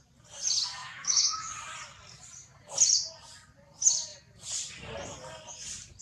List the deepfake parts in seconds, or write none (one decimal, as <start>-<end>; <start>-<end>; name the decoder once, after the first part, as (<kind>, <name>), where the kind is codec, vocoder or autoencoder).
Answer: 0.8-1.5 (autoencoder, DAC-VAE)